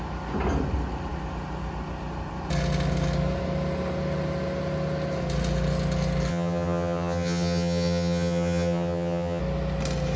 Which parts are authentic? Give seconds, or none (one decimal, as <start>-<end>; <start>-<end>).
0.0-6.3; 9.4-10.2